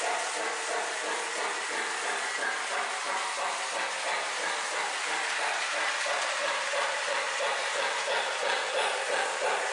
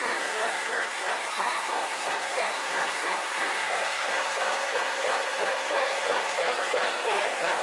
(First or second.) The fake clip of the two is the second